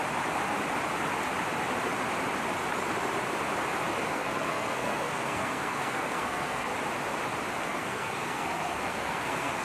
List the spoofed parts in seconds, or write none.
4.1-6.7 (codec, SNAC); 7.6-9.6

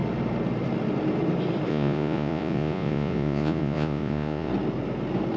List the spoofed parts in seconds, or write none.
1.7-4.5 (vocoder, Vocos)

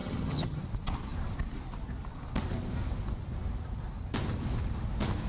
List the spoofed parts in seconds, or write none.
0.0-0.6 (vocoder, HiFi-GAN)

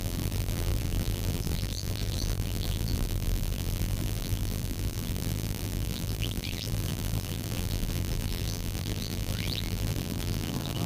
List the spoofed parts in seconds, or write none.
0.0-10.9 (vocoder, BigVGAN v2)

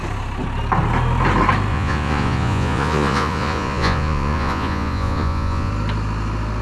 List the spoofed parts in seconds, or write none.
1.7-5.7 (vocoder, Vocos)